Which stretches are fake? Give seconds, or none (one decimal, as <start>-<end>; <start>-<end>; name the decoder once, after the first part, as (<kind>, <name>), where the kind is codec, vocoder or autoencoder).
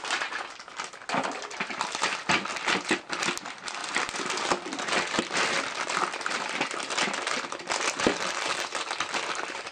none